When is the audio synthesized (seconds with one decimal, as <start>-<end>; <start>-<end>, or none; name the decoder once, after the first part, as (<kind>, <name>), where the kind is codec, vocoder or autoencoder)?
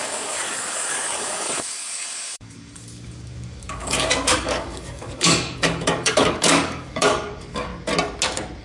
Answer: 0.0-7.7 (codec, DAC)